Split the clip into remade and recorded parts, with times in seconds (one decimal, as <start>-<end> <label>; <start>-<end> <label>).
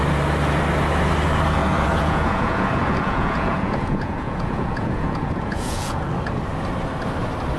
0.0-1.6 recorded; 1.6-6.0 remade; 6.0-7.6 recorded